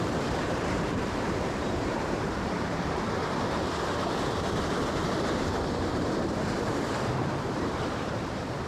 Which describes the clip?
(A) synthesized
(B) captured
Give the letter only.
A